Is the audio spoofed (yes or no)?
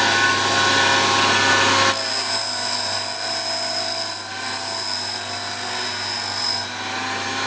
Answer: no